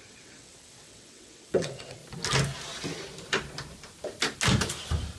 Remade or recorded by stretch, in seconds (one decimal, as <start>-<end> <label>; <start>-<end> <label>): 0.0-2.0 remade; 2.0-5.2 recorded